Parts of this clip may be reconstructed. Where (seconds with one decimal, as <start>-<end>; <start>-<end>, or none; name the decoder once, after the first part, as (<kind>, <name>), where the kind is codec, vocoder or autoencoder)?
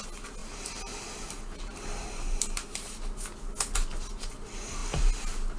0.4-3.0 (vocoder, BigVGAN v2)